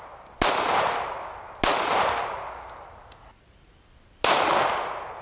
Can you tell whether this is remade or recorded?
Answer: recorded